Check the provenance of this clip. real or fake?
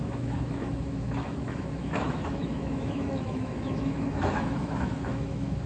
fake